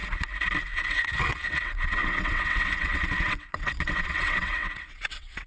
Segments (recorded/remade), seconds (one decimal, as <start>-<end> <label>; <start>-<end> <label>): 0.0-0.6 recorded; 0.6-5.5 remade